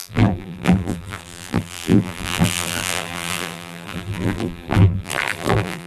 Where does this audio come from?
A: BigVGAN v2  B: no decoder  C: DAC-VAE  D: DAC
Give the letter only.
A